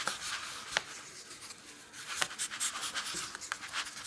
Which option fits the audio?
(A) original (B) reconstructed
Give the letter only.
A